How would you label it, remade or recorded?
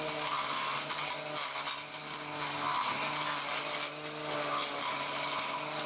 recorded